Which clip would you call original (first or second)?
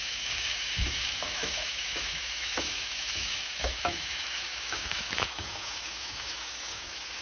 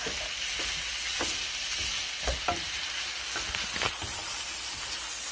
second